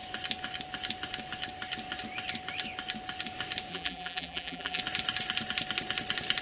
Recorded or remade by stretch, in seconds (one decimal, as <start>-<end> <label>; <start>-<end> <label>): 0.0-3.7 recorded; 3.7-4.8 remade; 4.8-6.4 recorded